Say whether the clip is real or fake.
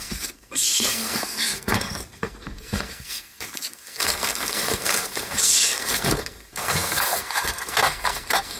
fake